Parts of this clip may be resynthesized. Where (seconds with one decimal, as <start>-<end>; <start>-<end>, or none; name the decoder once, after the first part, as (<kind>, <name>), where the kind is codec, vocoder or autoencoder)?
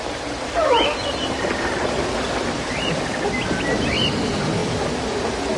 1.0-3.0 (vocoder, BigVGAN v2)